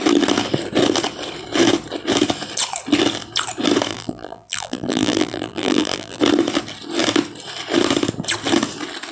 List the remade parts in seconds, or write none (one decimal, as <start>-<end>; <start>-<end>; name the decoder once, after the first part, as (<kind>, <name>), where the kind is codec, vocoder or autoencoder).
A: 3.9-6.2 (vocoder, BigVGAN v2)